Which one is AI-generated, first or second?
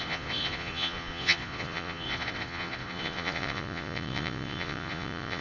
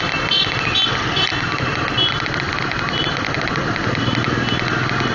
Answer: first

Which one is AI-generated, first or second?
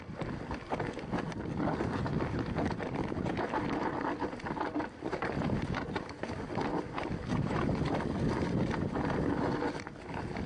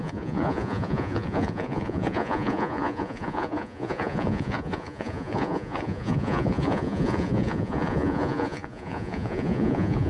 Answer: second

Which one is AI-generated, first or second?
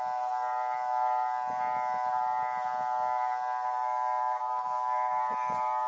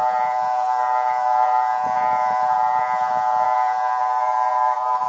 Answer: second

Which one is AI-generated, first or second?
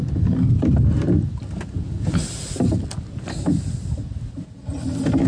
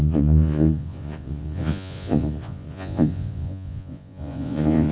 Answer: second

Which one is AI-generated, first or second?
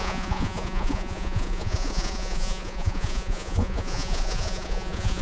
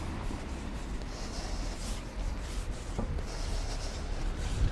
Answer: first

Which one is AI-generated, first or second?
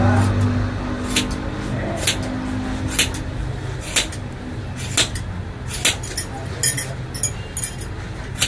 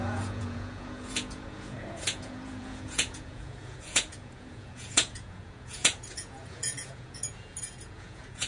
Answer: second